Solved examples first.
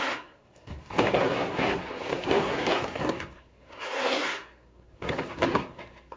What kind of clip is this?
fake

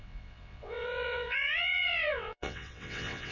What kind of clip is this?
fake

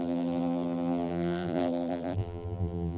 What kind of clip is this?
fake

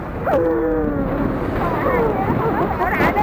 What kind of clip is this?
real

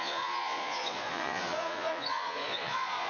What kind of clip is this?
fake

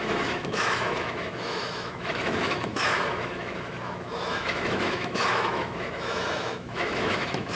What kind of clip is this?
fake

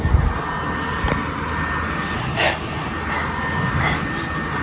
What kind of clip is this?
real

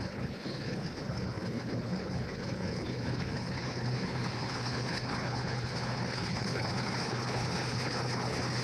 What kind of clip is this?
fake